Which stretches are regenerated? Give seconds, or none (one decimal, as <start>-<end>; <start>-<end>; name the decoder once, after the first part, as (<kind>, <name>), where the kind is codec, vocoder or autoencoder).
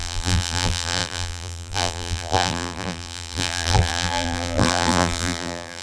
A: 0.0-5.8 (vocoder, BigVGAN v2)